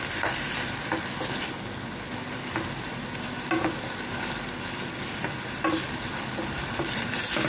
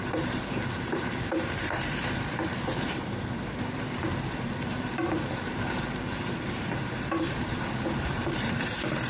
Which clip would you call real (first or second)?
first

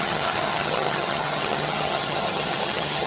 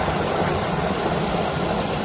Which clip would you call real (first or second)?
second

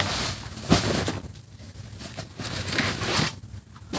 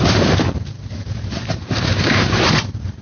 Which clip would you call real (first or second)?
first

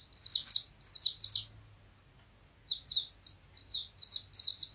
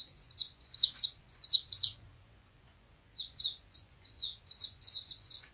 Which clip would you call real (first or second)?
first